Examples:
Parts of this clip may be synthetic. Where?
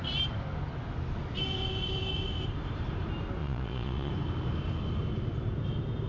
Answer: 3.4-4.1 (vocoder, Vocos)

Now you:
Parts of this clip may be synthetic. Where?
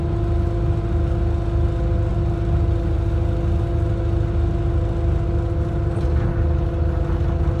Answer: none